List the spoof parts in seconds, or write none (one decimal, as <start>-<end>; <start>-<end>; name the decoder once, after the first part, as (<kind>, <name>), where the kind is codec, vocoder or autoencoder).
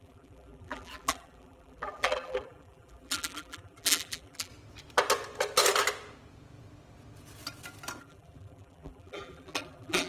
0.0-4.5 (vocoder, BigVGAN v2); 8.0-10.1